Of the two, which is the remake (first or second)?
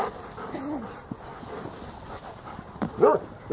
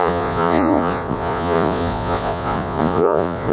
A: second